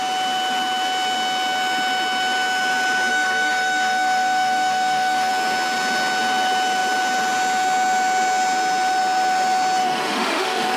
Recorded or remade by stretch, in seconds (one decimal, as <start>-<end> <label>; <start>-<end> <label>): 0.0-3.1 recorded; 3.1-5.3 remade; 5.3-9.8 recorded; 9.8-10.8 remade